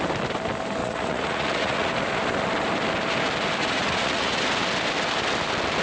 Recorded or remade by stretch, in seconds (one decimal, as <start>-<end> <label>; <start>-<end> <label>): 0.0-0.8 recorded; 0.8-1.9 remade; 1.9-3.6 recorded; 3.6-4.4 remade; 4.4-5.8 recorded